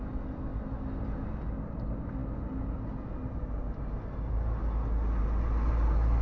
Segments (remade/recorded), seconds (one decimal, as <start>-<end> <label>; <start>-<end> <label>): 0.0-6.2 recorded